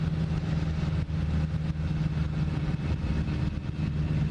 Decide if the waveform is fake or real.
real